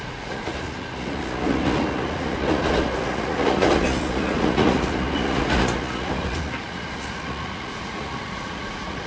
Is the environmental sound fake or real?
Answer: fake